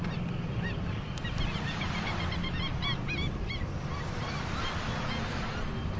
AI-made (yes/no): no